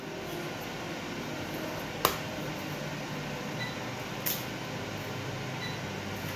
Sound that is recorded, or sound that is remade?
recorded